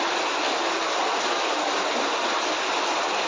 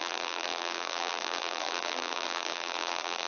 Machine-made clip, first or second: second